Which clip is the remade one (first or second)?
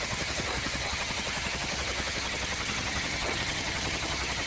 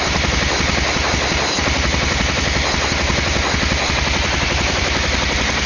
first